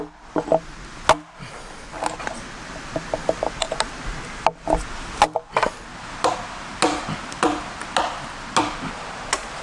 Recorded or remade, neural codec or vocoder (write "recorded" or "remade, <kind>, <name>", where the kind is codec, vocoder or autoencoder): recorded